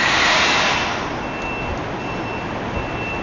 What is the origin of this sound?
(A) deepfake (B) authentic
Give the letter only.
B